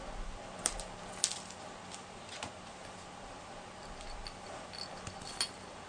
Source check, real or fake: real